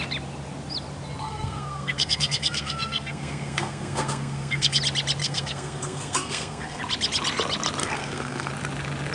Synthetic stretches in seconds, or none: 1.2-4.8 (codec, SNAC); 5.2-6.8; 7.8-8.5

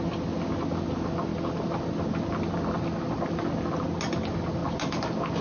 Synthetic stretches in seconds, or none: none

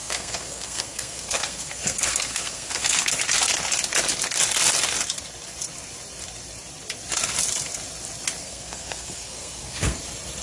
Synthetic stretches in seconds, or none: 0.0-3.1 (codec, SNAC); 8.4-10.0

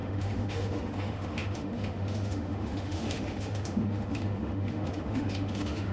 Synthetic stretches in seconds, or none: 0.0-5.9 (autoencoder, DAC-VAE)

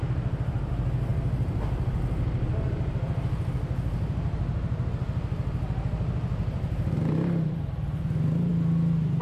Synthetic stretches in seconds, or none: none

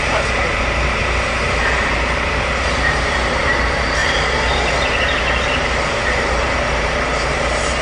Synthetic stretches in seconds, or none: 0.0-1.0 (vocoder, BigVGAN v2); 1.6-7.8